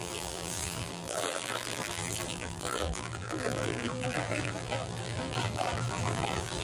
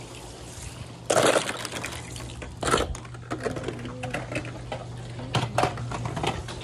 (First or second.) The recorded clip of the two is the second